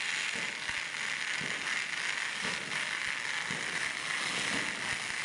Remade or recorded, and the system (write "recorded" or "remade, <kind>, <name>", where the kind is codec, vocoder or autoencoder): recorded